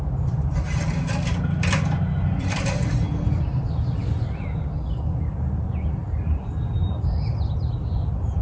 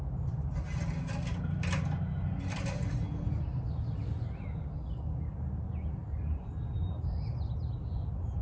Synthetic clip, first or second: first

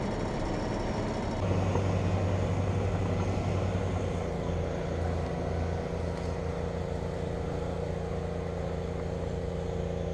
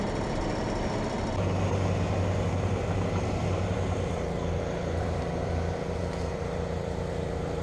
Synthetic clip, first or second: second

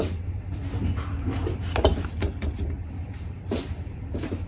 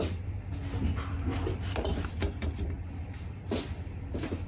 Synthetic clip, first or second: first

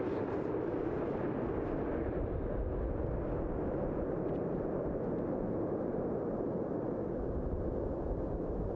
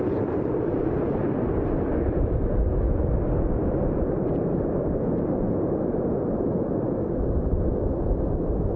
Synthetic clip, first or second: second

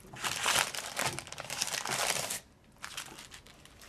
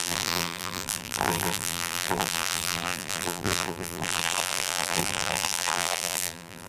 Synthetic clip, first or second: second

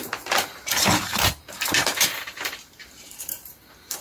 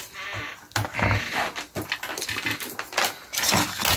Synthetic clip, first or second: first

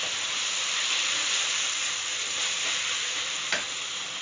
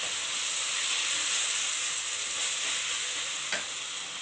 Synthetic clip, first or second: first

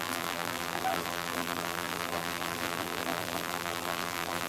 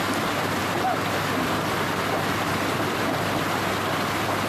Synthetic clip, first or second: first